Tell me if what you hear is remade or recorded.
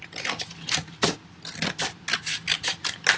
recorded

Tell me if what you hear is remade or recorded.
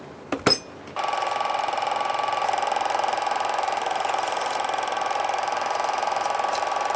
recorded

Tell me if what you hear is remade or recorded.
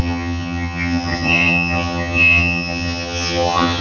remade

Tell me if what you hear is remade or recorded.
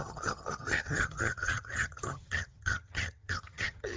remade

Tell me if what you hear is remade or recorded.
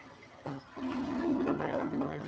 remade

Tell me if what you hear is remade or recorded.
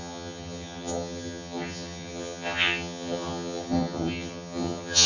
remade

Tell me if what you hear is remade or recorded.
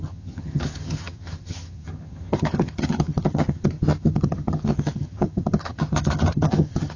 remade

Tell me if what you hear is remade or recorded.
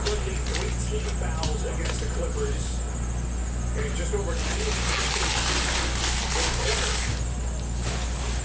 recorded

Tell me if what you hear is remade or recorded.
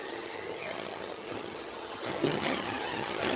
remade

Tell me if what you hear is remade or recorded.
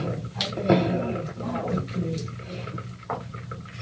recorded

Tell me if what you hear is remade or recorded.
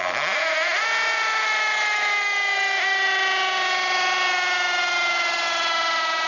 recorded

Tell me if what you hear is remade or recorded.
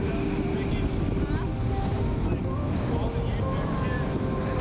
recorded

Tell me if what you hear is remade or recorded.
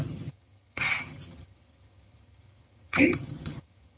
remade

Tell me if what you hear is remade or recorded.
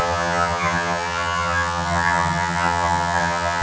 remade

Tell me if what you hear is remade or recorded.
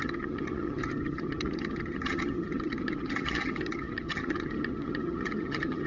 remade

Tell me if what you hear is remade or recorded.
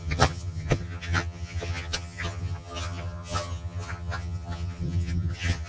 remade